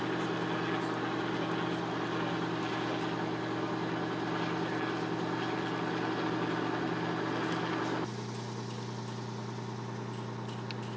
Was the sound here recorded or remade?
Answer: recorded